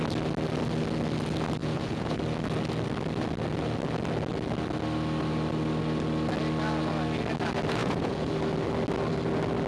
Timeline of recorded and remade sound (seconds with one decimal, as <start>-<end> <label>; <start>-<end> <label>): 0.0-1.6 recorded; 1.6-2.2 remade; 2.2-7.8 recorded; 7.8-8.3 remade; 8.3-9.7 recorded

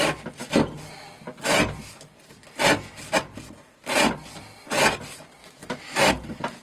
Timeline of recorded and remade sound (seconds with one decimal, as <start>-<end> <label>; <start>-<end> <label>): 0.0-5.4 recorded; 5.4-6.1 remade; 6.1-6.6 recorded

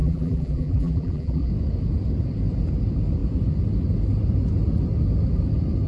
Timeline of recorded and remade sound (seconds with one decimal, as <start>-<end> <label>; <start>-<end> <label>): 0.0-1.5 remade; 1.5-5.9 recorded

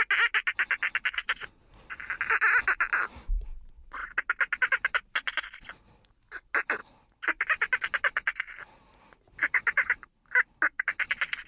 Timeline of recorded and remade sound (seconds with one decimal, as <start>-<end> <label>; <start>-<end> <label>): 0.0-11.5 recorded